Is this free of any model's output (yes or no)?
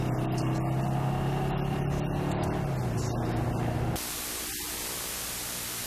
yes